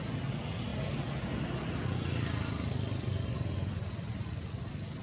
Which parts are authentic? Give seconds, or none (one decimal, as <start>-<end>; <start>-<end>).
0.0-5.0